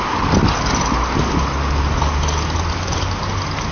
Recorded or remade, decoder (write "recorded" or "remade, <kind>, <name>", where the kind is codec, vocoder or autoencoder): recorded